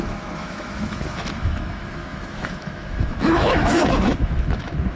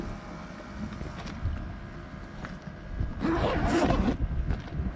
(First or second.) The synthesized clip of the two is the first